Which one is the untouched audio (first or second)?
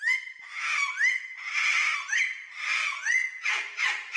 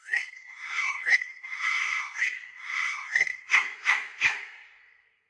first